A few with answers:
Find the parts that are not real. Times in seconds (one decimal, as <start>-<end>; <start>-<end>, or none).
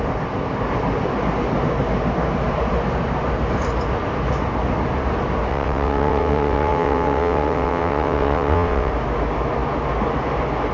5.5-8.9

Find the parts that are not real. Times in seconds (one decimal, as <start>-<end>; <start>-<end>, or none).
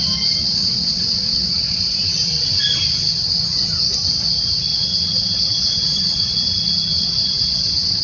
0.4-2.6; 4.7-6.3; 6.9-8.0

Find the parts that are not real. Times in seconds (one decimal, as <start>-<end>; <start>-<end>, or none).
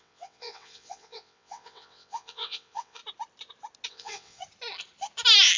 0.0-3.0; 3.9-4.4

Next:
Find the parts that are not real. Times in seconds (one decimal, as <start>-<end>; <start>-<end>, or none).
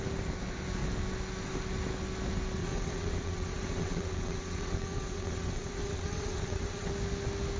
2.6-6.9